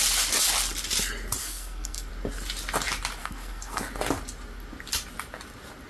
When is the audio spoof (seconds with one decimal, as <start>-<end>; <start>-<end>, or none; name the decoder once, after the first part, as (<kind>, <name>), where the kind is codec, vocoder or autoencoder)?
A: 1.4-2.1 (codec, SNAC); 3.2-3.9